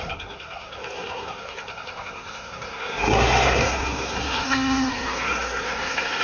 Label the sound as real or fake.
fake